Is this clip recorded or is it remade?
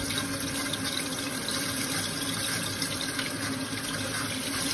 recorded